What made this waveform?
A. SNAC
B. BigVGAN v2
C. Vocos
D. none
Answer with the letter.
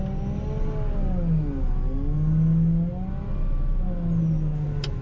D